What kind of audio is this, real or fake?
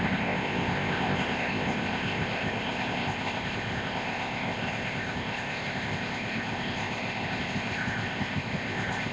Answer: fake